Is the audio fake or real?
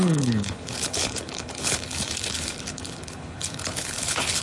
fake